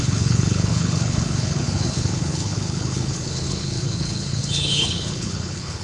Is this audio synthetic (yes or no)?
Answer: yes